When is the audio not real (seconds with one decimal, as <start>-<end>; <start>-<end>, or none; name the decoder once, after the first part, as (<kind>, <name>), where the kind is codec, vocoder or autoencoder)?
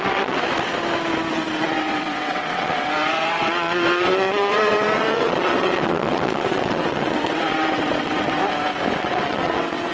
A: 0.0-0.7 (vocoder, WaveNeXt); 1.3-8.4; 9.0-9.9